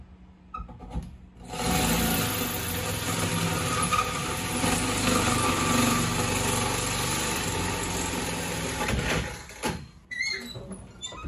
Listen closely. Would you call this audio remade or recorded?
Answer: recorded